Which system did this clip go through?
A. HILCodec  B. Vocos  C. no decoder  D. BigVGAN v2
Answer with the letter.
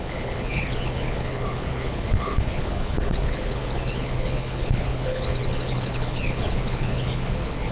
A